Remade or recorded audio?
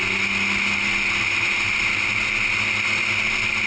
recorded